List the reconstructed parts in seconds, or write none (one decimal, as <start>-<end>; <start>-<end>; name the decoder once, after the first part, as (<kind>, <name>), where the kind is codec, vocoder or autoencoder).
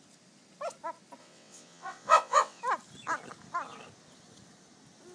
1.2-2.6 (vocoder, WaveNeXt)